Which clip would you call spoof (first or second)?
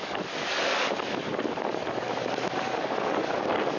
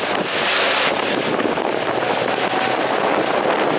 first